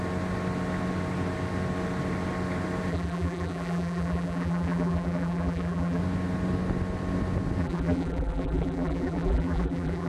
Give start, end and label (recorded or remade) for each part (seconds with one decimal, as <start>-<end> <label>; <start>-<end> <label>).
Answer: 0.0-2.9 recorded; 2.9-6.0 remade; 6.0-7.6 recorded; 7.6-10.1 remade